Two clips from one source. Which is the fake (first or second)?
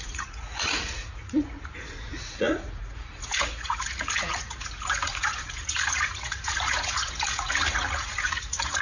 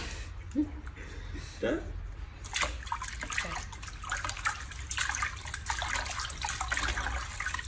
first